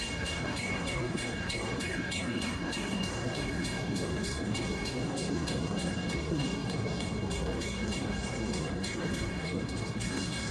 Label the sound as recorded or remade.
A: remade